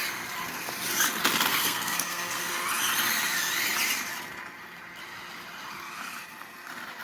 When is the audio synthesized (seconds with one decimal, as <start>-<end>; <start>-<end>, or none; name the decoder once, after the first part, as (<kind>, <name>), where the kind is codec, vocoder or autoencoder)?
1.5-2.5 (codec, SNAC)